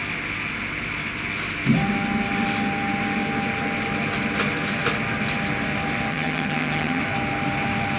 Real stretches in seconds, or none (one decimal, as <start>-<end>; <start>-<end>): 0.0-6.1; 7.0-8.0